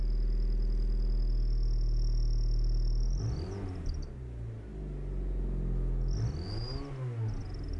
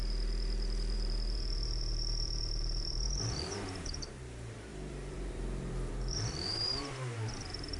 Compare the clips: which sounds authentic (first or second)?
first